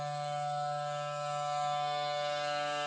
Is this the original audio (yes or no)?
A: no